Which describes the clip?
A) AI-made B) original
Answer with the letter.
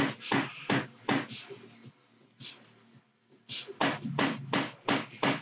B